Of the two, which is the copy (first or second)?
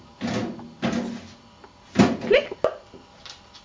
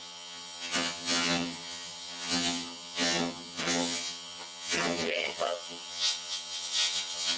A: second